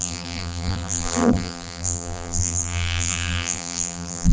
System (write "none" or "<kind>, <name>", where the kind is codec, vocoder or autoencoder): vocoder, BigVGAN v2